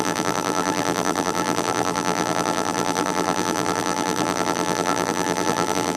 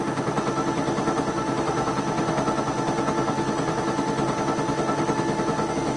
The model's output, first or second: first